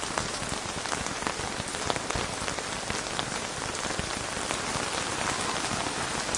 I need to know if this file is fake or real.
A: real